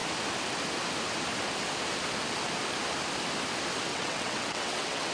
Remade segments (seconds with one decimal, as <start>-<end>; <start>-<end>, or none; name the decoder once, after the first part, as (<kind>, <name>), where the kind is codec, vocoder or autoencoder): 3.9-5.1 (vocoder, WaveNeXt)